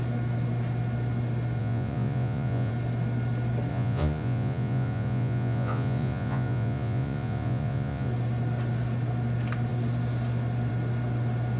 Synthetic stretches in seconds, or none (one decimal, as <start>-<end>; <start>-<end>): 1.6-2.7; 3.7-8.1